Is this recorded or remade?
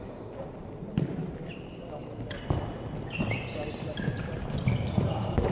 recorded